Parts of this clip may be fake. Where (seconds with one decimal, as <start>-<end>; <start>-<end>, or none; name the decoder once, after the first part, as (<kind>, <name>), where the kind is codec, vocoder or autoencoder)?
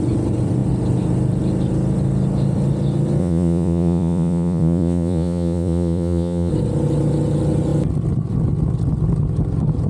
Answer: 3.2-6.5 (vocoder, Vocos)